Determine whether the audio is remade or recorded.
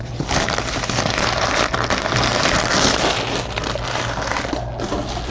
recorded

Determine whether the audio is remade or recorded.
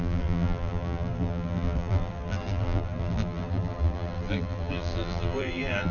remade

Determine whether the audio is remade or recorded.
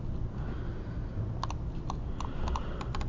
recorded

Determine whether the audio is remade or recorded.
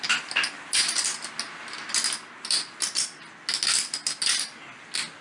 recorded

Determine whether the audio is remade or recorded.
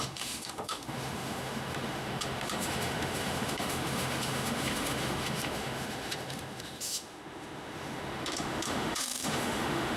remade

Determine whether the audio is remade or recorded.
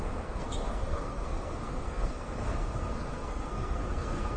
remade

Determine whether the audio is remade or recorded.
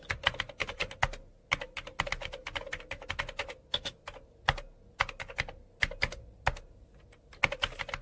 recorded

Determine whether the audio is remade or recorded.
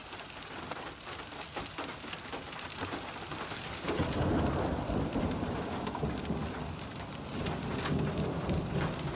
recorded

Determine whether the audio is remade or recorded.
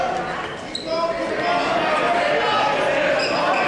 recorded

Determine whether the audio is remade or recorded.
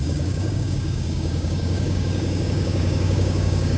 remade